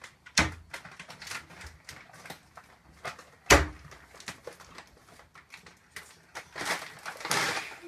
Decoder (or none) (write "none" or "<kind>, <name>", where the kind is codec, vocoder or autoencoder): none